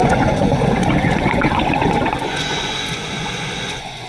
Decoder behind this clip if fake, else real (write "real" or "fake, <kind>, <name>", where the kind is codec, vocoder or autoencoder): fake, vocoder, Vocos